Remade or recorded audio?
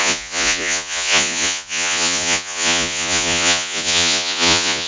remade